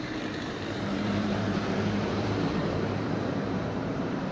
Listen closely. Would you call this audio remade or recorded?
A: remade